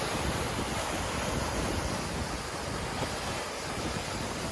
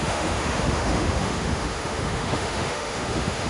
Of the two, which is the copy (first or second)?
second